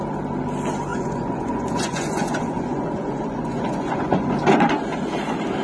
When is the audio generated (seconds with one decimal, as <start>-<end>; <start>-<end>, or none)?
0.9-4.3